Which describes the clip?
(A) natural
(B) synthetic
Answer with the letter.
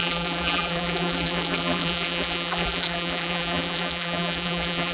B